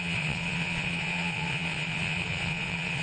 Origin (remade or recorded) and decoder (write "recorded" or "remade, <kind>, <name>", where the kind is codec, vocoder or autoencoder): remade, vocoder, Vocos